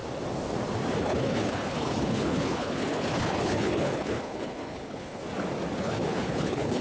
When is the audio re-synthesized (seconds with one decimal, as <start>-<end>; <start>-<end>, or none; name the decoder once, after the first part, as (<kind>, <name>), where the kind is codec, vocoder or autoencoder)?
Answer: 1.0-5.2 (codec, HILCodec); 5.8-6.8